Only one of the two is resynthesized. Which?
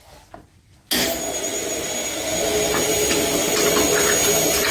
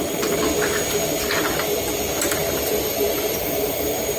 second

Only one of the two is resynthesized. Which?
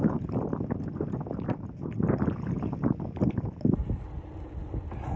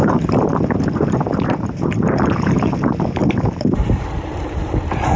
second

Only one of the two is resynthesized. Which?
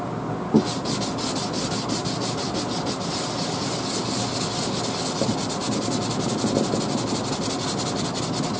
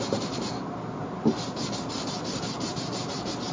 second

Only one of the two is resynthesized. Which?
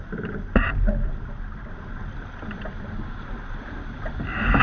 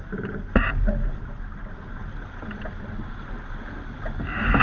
first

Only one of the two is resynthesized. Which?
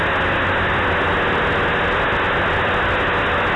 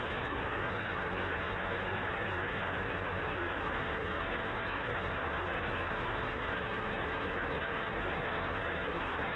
second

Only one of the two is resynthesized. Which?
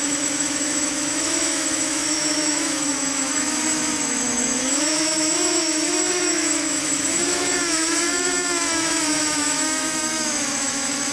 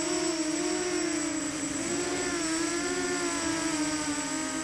first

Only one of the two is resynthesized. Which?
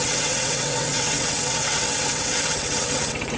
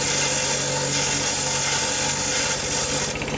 first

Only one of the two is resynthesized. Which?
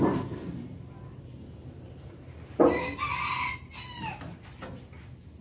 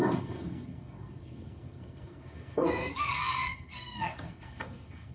second